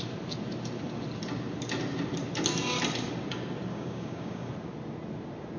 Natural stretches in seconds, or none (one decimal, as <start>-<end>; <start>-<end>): 0.0-3.7; 4.5-5.6